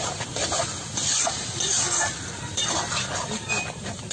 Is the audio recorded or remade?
recorded